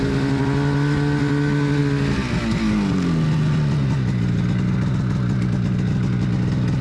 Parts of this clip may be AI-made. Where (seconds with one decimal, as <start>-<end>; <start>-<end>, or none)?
none